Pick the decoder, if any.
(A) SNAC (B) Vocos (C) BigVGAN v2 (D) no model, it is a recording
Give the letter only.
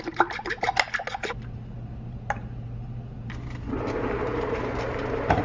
C